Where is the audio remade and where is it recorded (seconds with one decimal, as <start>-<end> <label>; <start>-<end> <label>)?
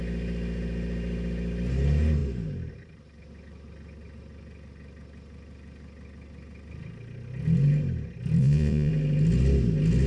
0.0-8.4 recorded; 8.4-8.9 remade; 8.9-10.1 recorded